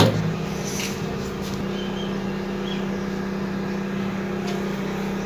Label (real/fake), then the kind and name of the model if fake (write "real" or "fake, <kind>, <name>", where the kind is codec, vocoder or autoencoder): real